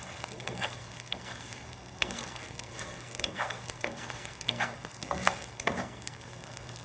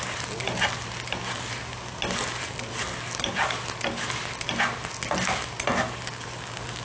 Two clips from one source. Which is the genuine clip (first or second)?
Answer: second